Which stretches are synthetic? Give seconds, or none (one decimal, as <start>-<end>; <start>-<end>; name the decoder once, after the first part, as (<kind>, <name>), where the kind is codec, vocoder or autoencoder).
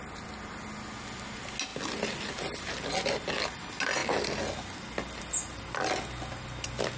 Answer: none